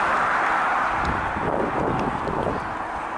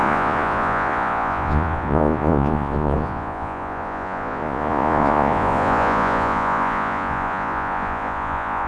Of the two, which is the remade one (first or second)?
second